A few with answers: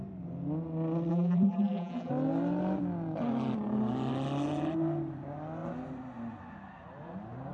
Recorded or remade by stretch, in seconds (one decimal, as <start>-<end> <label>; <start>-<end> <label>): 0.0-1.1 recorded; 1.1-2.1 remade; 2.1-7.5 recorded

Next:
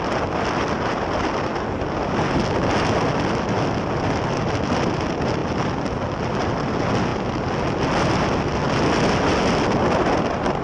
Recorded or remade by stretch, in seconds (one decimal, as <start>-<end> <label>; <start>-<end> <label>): 0.0-10.6 recorded

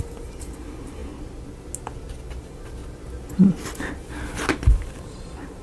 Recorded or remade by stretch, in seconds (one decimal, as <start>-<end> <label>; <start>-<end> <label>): 0.0-1.0 remade; 1.0-2.3 recorded; 2.3-2.8 remade; 2.8-4.5 recorded; 4.5-5.6 remade